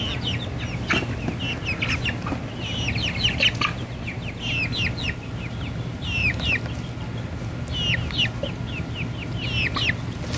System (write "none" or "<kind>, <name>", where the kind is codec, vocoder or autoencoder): none